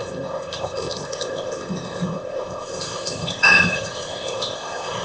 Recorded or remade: remade